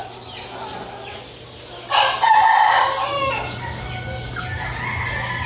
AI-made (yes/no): no